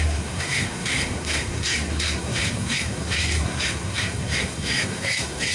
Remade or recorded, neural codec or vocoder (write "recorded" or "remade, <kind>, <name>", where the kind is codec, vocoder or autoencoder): remade, codec, SNAC